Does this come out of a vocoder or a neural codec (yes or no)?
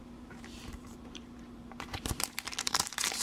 yes